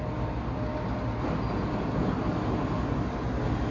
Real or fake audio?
real